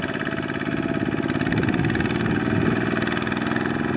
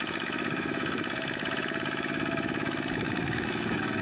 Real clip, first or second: first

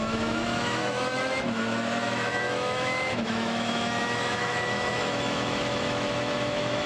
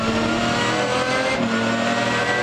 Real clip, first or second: second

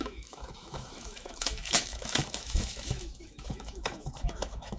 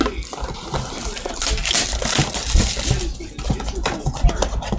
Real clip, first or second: second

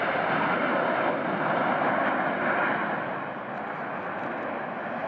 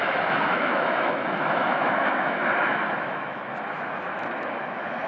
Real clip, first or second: first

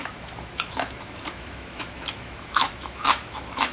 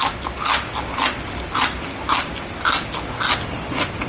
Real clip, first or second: second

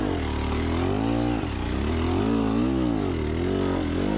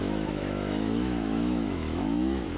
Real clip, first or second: first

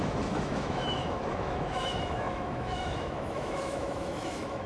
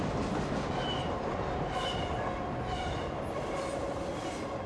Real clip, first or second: second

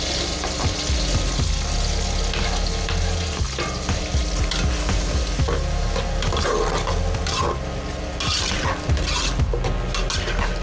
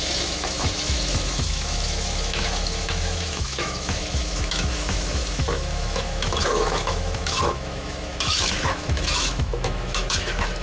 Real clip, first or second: first